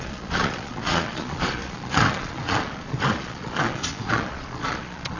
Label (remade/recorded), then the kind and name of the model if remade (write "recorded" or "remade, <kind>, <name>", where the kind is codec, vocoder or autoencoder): remade, vocoder, Vocos